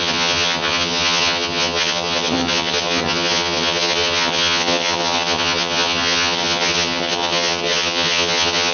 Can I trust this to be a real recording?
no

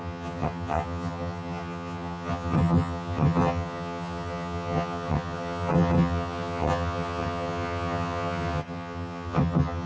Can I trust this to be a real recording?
no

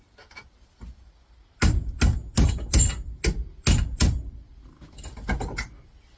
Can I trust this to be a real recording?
yes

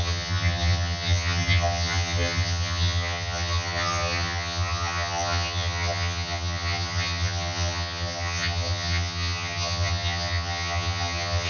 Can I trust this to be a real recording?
no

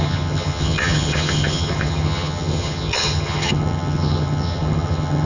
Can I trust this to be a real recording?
no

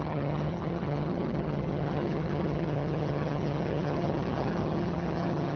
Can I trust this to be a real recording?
no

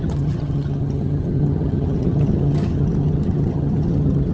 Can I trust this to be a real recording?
no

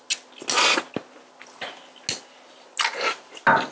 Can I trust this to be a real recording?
yes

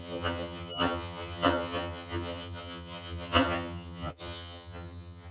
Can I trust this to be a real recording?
no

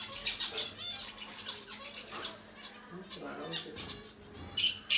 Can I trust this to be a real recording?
yes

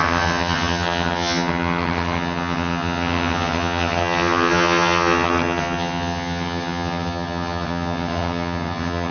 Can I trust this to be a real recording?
no